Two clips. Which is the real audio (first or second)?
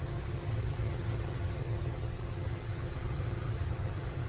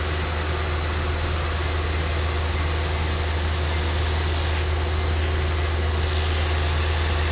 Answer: second